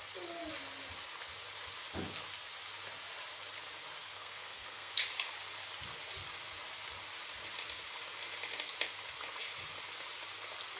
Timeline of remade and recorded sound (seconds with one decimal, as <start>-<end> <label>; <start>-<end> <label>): 0.0-4.0 recorded; 4.0-4.9 remade; 4.9-10.8 recorded